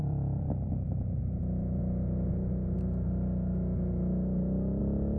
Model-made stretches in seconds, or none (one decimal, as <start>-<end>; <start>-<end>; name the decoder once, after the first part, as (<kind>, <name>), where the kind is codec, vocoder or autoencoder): 0.0-1.8 (vocoder, BigVGAN v2); 4.8-5.2